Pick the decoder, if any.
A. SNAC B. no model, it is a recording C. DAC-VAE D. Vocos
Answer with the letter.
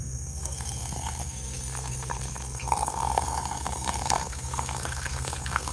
A